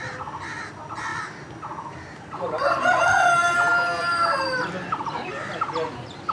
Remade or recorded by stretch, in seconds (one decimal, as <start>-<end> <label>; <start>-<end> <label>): 0.0-6.3 recorded